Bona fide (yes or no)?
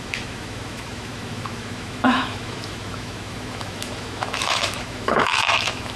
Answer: no